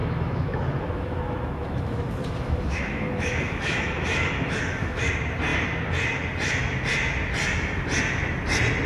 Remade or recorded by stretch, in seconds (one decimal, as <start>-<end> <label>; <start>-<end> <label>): 0.0-5.1 remade; 5.1-8.9 recorded